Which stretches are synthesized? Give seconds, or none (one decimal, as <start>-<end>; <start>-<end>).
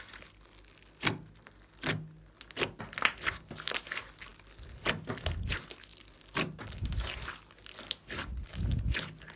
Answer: 5.9-7.3